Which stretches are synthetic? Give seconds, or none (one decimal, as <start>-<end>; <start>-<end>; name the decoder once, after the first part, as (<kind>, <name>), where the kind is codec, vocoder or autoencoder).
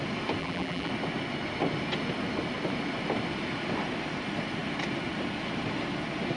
0.4-0.9 (vocoder, BigVGAN v2)